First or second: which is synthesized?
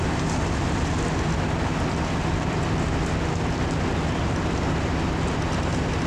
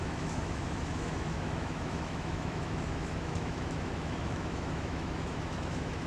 second